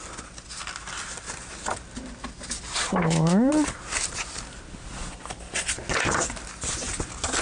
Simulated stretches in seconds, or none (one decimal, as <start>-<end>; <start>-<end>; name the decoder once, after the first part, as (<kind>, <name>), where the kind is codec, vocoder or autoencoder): 2.9-3.5 (autoencoder, DAC-VAE)